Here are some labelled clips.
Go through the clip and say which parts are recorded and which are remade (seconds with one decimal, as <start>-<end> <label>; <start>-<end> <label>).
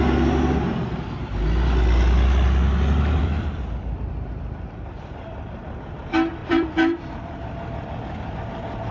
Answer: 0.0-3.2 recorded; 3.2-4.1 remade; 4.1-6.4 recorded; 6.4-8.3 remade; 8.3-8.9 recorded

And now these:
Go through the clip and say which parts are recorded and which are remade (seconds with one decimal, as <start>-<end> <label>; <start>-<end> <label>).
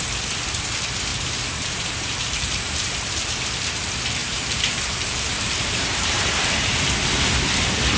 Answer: 0.0-1.1 recorded; 1.1-3.1 remade; 3.1-4.2 recorded; 4.2-6.2 remade; 6.2-8.0 recorded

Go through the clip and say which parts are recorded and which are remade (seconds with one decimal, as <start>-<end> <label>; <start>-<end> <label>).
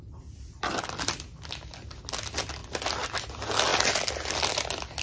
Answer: 0.0-5.0 recorded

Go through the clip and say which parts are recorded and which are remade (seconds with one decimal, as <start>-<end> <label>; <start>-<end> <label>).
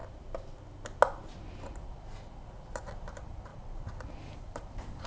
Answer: 0.0-3.1 recorded; 3.1-5.1 remade